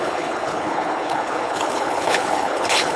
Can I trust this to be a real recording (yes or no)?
no